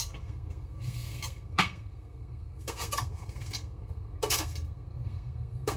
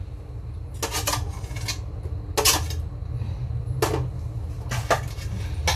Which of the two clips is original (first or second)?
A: second